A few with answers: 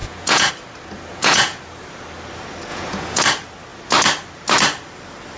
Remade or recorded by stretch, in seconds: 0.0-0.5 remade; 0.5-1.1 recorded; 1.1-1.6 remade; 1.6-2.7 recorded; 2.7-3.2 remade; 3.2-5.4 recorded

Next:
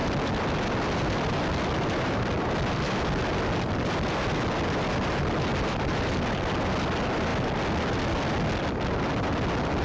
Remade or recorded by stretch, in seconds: 0.0-9.8 recorded

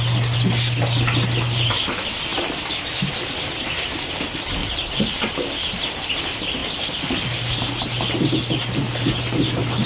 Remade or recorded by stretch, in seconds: 0.0-4.6 recorded; 4.6-5.3 remade; 5.3-9.9 recorded

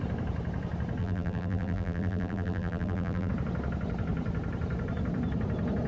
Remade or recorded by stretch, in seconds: 0.0-1.0 recorded; 1.0-3.3 remade; 3.3-5.9 recorded